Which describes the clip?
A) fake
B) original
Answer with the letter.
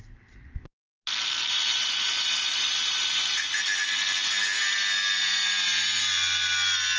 B